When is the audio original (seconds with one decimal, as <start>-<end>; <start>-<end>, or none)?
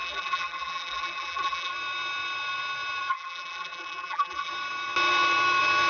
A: 1.7-3.1; 4.5-5.9